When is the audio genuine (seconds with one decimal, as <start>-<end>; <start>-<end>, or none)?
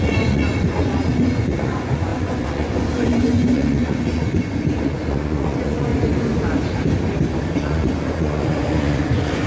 5.9-7.6